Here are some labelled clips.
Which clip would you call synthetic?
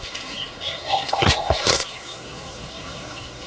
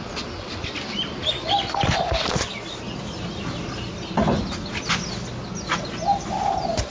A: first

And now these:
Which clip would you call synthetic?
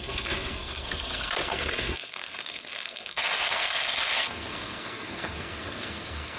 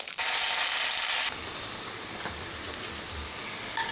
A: first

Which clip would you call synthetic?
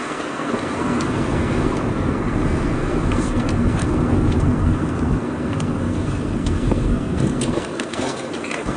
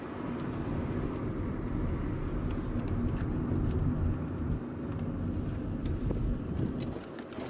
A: first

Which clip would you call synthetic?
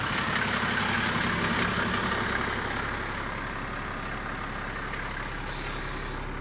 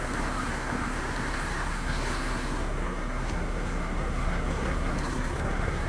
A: second